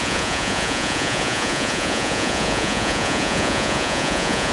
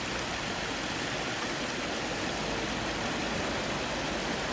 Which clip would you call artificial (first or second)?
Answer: first